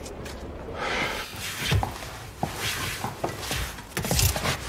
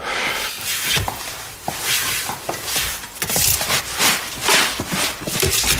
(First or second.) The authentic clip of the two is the first